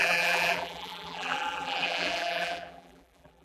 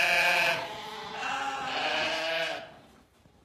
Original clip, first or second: second